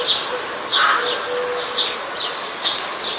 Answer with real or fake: real